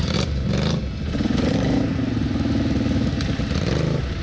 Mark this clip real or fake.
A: real